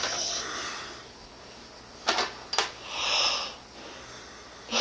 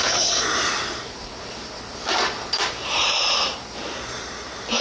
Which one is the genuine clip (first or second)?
first